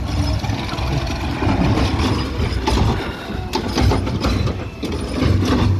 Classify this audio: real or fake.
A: real